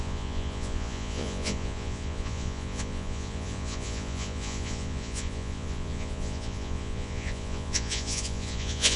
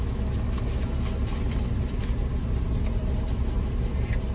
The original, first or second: second